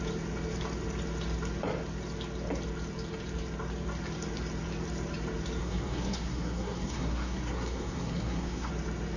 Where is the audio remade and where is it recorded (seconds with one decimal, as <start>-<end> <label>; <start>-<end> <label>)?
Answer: 0.0-5.6 recorded; 5.6-8.7 remade; 8.7-9.2 recorded